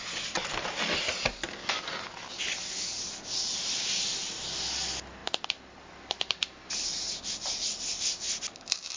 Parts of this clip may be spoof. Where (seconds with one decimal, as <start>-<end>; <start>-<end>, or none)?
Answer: none